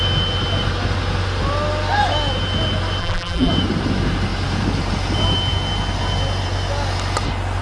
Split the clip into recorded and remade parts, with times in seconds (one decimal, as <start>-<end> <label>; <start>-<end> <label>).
0.0-3.0 recorded; 3.0-3.5 remade; 3.5-7.6 recorded